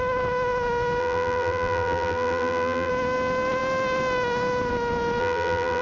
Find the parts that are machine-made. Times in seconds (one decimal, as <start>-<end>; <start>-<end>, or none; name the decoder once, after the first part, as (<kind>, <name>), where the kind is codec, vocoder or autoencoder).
1.0-2.9 (vocoder, BigVGAN v2); 5.2-5.8